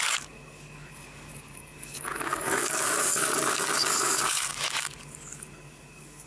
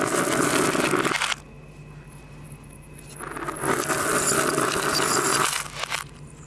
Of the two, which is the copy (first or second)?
first